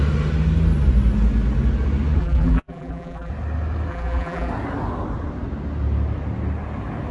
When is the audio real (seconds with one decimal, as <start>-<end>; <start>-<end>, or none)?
0.0-2.2; 3.3-3.9; 4.5-7.1